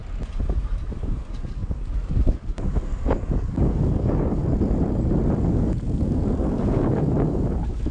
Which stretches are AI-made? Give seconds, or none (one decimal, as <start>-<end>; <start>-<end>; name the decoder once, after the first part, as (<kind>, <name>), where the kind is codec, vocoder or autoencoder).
0.9-4.4 (codec, DAC); 5.5-7.9